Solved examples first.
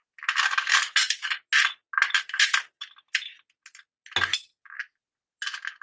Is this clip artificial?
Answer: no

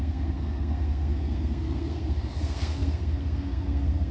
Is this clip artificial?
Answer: yes